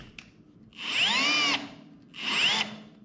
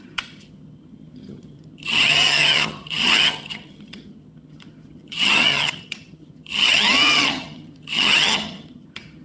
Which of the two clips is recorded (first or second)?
first